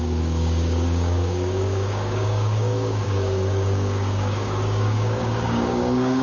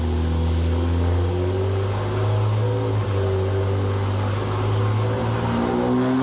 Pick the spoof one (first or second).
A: first